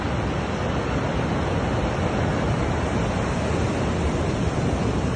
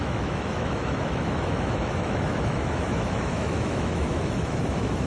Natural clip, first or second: first